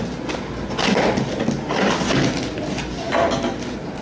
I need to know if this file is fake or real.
real